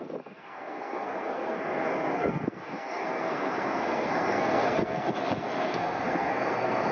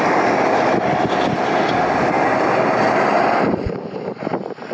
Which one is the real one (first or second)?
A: second